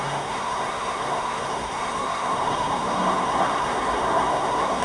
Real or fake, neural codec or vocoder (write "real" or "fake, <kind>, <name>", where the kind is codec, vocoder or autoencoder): fake, codec, SNAC